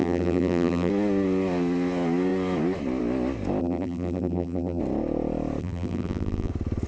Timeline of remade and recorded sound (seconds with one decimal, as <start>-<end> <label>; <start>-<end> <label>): 0.0-0.9 remade; 0.9-3.6 recorded; 3.6-4.8 remade; 4.8-5.6 recorded; 5.6-6.5 remade; 6.5-6.9 recorded